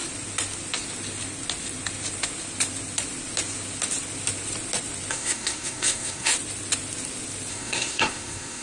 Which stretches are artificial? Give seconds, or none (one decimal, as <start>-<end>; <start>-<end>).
5.1-6.3; 7.5-8.6